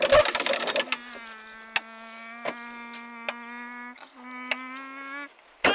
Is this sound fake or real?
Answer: real